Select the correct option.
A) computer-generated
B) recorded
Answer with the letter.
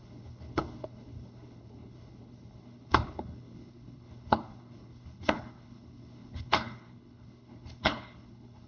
A